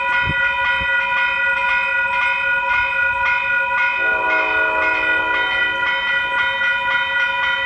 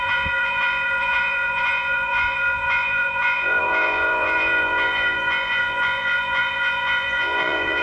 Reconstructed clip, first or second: second